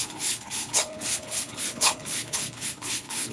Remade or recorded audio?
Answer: remade